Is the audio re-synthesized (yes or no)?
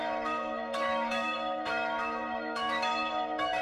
yes